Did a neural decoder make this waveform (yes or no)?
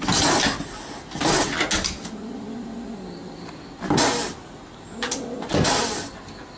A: no